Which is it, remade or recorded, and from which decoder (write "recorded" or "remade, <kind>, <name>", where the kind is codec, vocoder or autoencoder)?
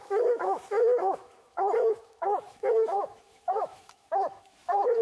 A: remade, autoencoder, DAC-VAE